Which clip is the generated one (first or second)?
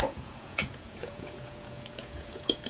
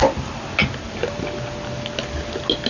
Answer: first